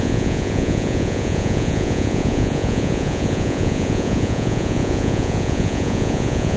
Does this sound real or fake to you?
fake